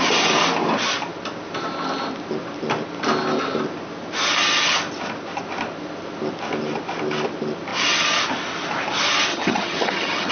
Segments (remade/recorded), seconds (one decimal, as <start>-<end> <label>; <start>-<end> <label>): 0.0-9.3 recorded; 9.3-10.3 remade